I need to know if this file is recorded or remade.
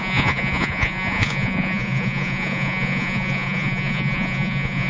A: remade